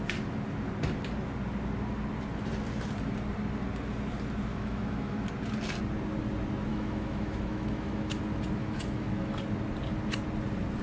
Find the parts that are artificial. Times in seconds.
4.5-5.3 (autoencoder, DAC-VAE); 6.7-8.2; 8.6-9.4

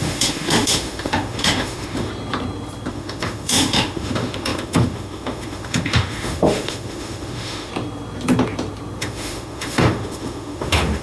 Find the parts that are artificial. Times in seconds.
0.0-2.1 (autoencoder, DAC-VAE); 2.9-7.7; 9.0-11.0

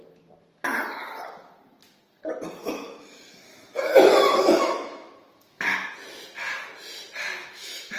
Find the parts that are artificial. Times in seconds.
2.6-5.9 (autoencoder, DAC-VAE); 7.4-8.0

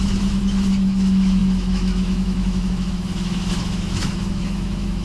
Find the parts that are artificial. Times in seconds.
0.0-5.0 (autoencoder, DAC-VAE)

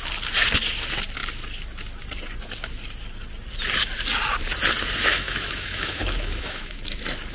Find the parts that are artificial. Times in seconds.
5.1-6.8 (autoencoder, DAC-VAE)

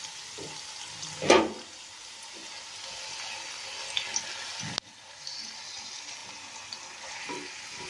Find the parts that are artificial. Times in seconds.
none

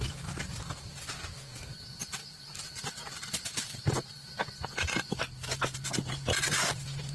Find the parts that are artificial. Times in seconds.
none

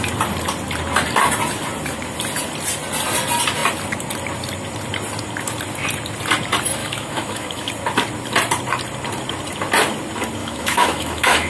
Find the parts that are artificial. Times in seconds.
6.8-7.7 (autoencoder, DAC-VAE); 10.4-11.5